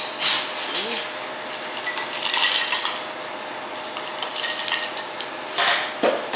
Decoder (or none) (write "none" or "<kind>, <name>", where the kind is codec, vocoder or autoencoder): none